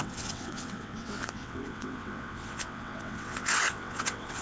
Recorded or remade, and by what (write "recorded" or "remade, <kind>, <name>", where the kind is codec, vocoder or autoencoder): remade, vocoder, WaveNeXt